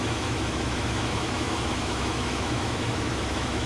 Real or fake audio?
fake